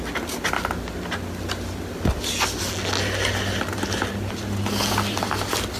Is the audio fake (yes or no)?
no